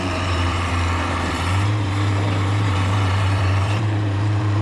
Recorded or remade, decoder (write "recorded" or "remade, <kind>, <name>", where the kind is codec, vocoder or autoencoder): remade, vocoder, BigVGAN v2